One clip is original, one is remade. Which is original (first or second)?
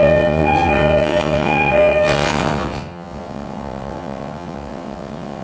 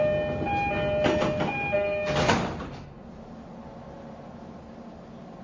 second